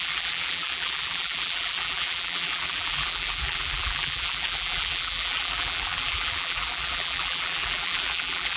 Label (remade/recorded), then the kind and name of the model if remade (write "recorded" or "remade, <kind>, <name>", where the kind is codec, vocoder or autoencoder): remade, vocoder, BigVGAN v2